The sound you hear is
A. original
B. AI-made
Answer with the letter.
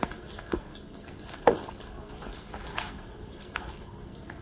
B